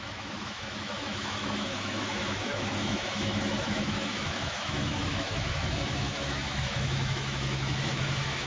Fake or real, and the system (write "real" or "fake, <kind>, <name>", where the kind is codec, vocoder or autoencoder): fake, autoencoder, DAC-VAE